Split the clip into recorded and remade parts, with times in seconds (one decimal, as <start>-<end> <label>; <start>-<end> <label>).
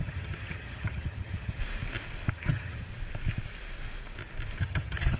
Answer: 0.0-1.6 remade; 1.6-2.3 recorded; 2.3-2.9 remade; 2.9-4.6 recorded; 4.6-5.2 remade